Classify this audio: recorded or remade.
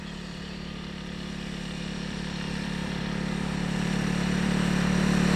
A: remade